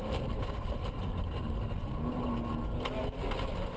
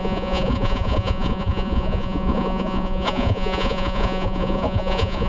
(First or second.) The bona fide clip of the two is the first